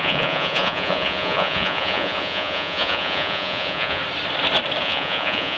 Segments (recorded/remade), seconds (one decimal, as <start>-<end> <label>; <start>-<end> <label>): 0.0-4.0 remade; 4.0-4.8 recorded; 4.8-5.6 remade